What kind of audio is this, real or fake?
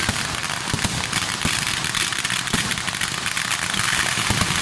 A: real